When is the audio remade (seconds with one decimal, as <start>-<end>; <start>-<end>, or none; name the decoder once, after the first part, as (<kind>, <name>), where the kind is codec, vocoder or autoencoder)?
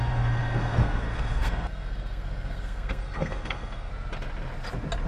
0.0-3.9 (codec, SNAC)